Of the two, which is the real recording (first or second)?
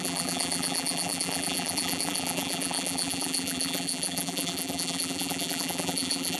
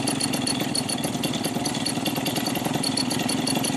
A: second